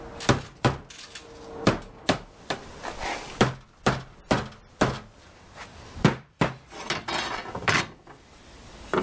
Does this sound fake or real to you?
real